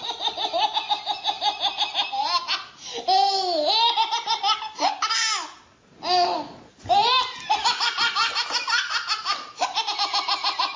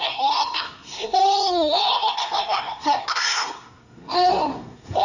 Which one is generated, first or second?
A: second